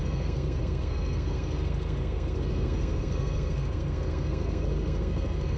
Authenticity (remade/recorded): remade